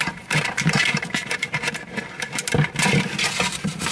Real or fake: fake